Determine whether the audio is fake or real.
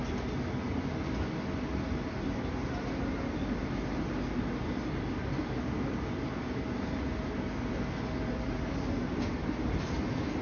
real